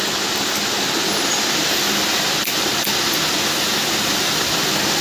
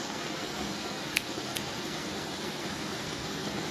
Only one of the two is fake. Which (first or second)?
second